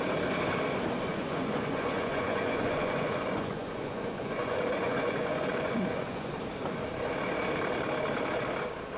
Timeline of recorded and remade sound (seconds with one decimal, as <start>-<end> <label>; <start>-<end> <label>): 0.0-1.1 recorded; 1.1-6.3 remade; 6.3-9.0 recorded